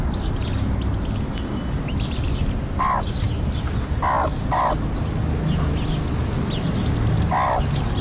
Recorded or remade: recorded